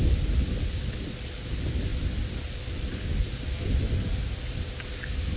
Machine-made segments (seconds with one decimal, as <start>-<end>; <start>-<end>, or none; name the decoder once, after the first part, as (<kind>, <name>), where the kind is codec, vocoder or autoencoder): none